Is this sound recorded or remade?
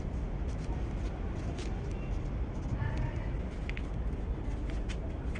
recorded